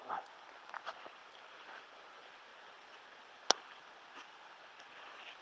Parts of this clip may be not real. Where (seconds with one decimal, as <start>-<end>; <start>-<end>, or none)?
0.0-5.4